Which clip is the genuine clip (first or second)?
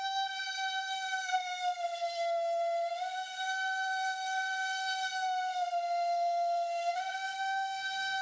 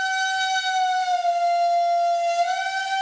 second